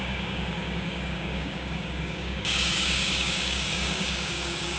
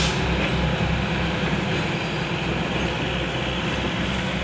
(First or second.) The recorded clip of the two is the second